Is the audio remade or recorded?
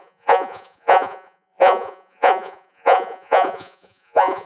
remade